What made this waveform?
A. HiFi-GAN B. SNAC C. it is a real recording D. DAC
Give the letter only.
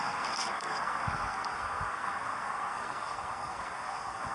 B